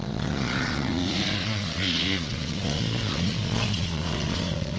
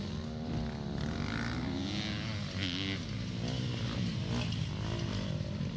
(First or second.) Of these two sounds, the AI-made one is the first